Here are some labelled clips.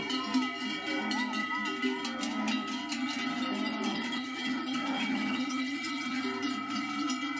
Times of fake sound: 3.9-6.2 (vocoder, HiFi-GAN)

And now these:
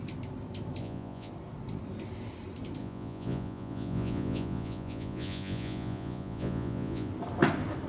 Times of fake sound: 0.8-1.3 (vocoder, Vocos); 2.8-7.1

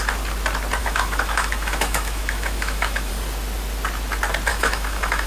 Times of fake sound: 0.8-3.1 (autoencoder, DAC-VAE); 4.5-5.3